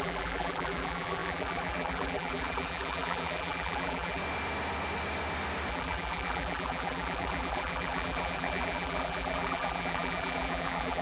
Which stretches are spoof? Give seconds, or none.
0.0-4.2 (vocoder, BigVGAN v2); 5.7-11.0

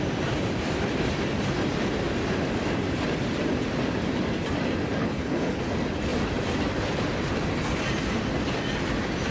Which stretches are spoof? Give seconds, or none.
5.0-5.6 (codec, HILCodec)